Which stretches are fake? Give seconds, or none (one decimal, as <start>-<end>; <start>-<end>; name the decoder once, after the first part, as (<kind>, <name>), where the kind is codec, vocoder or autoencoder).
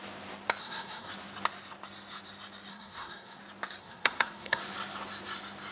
0.6-1.1 (codec, SNAC); 2.7-3.4; 3.8-4.6